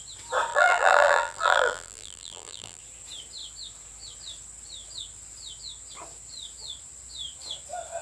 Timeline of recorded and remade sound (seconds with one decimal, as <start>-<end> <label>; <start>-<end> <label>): 0.0-0.5 recorded; 0.5-2.8 remade; 2.8-8.0 recorded